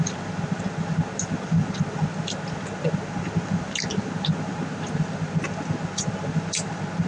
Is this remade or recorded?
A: recorded